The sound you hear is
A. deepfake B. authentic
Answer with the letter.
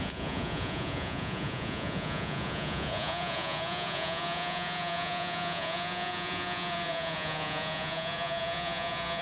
A